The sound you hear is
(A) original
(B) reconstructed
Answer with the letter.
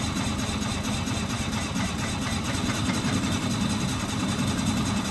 A